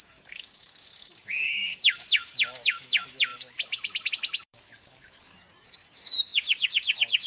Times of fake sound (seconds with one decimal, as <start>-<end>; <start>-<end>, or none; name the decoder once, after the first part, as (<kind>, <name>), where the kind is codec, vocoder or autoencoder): 0.0-7.3 (codec, DAC)